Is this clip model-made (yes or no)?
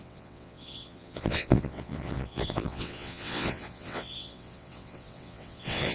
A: yes